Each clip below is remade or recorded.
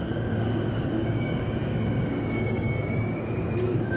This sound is remade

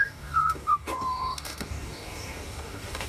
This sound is remade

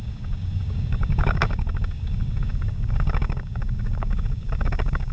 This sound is remade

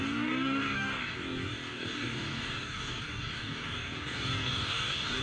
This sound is remade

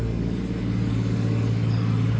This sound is remade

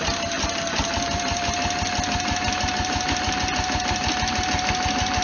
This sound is recorded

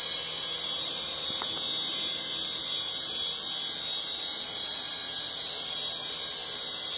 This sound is recorded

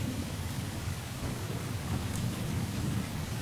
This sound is remade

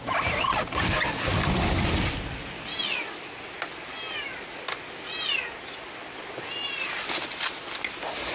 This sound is recorded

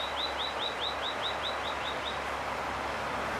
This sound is recorded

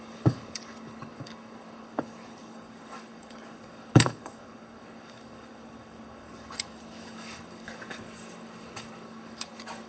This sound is remade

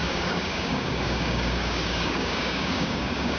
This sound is remade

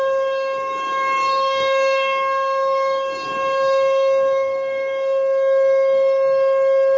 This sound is remade